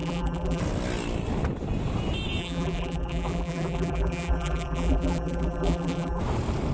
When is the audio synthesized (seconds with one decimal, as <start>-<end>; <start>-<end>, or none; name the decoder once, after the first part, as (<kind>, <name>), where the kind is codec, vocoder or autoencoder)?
0.0-0.6 (vocoder, BigVGAN v2); 2.4-6.2